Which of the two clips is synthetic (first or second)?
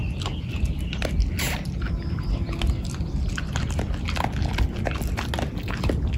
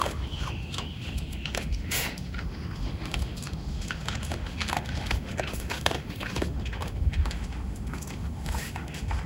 second